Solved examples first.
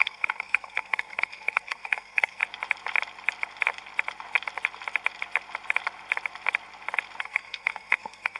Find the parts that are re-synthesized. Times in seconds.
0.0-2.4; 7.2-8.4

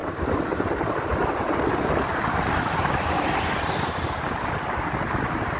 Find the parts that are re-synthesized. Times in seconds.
none

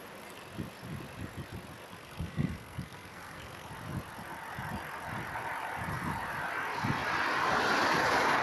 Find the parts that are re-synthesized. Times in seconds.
2.0-3.7

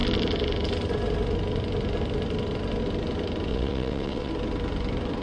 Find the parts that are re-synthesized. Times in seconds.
3.5-4.3